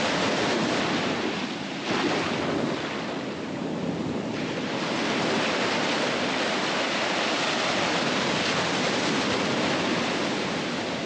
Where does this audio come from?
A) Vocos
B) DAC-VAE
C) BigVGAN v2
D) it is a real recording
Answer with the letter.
D